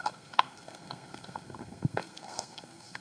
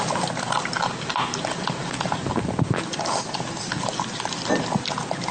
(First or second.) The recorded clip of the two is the second